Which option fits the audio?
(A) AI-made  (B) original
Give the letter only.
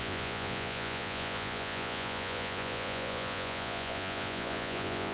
A